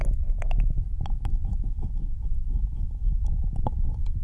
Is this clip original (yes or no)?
yes